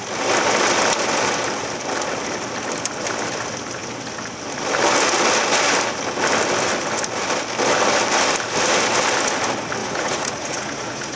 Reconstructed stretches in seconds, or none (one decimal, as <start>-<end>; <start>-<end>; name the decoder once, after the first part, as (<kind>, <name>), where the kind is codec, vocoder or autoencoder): 9.8-11.2 (vocoder, Vocos)